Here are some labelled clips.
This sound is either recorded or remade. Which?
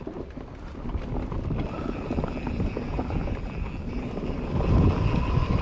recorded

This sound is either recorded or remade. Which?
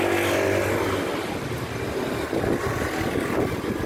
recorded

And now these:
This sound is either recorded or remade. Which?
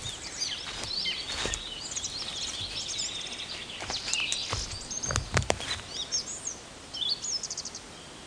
recorded